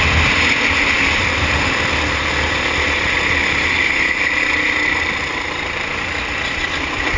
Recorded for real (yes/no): yes